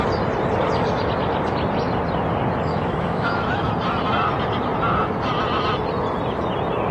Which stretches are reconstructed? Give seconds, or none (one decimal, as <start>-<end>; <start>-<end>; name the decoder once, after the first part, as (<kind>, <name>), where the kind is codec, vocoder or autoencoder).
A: 2.7-3.7 (autoencoder, DAC-VAE)